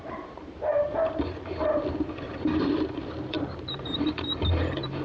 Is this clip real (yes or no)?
no